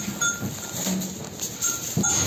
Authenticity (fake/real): real